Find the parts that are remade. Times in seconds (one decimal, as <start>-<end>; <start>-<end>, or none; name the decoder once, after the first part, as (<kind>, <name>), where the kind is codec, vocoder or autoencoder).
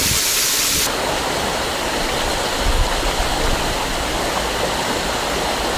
none